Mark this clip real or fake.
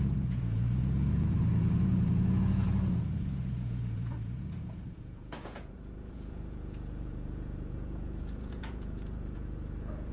fake